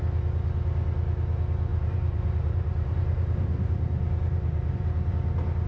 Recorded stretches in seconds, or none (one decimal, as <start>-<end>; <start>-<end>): 0.0-1.7; 5.1-5.7